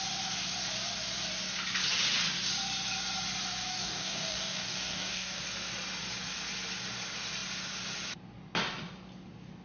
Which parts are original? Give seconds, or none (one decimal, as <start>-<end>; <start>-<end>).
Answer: 0.0-3.7; 5.4-9.6